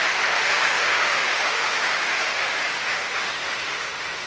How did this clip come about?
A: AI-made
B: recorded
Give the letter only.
A